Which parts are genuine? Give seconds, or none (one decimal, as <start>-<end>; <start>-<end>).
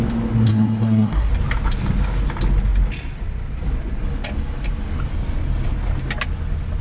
0.0-0.5; 1.3-6.8